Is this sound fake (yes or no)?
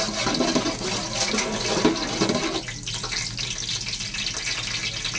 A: no